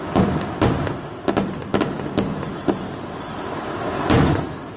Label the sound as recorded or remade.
recorded